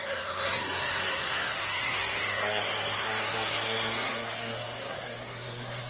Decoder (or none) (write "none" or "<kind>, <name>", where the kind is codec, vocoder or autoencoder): codec, SNAC